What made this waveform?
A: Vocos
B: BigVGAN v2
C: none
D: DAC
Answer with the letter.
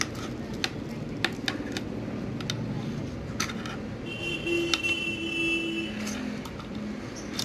C